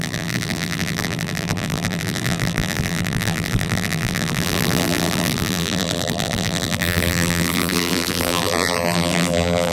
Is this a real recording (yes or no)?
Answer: no